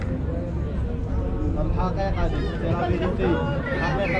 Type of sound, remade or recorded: recorded